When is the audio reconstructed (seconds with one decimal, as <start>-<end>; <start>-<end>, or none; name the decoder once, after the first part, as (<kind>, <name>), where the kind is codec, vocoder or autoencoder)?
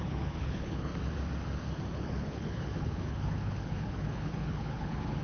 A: 0.0-0.9 (codec, HILCodec); 1.9-5.2